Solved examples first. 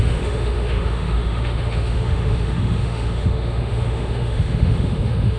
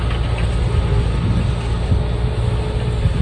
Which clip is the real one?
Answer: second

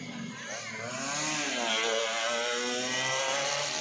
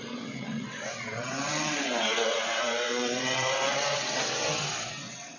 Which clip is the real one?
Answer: first